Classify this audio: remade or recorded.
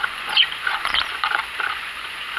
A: remade